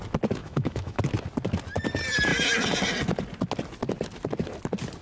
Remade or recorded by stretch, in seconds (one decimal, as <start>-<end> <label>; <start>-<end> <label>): 0.0-0.4 recorded; 0.4-1.0 remade; 1.0-5.0 recorded